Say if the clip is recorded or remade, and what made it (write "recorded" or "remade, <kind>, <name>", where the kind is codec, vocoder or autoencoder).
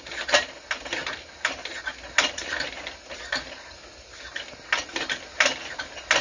recorded